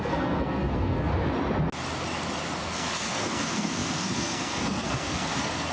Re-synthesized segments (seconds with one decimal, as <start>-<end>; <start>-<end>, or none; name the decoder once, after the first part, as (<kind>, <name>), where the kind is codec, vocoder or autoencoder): 0.0-1.1 (codec, SNAC); 2.6-5.7